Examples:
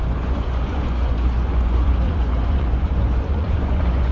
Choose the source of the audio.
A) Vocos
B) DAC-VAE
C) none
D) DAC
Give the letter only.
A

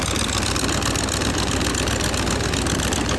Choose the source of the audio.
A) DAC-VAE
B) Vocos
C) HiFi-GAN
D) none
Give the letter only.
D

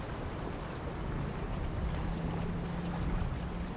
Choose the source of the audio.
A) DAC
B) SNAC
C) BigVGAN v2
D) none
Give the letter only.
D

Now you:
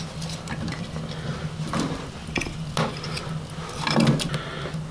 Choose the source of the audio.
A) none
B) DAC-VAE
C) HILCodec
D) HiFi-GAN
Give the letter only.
A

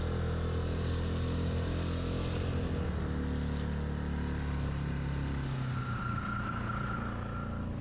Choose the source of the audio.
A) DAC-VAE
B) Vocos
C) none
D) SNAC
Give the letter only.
C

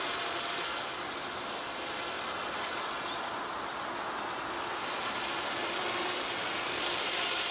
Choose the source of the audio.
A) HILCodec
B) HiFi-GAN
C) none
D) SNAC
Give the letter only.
C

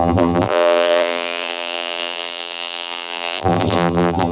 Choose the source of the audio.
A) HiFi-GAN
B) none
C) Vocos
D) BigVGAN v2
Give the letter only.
D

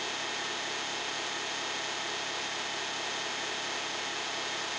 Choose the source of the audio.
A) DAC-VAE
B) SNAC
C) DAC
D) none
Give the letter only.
D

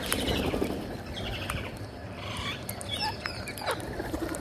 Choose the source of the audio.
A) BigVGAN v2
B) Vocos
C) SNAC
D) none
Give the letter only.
A